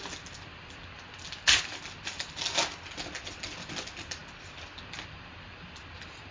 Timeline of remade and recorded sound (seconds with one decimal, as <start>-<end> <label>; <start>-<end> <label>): 0.0-6.3 recorded

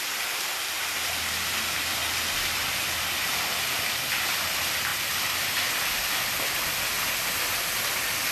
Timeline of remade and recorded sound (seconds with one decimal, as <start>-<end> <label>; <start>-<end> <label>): 0.0-4.9 remade; 4.9-6.2 recorded; 6.2-8.3 remade